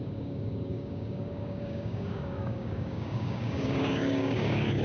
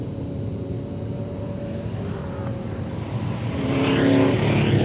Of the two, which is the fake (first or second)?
first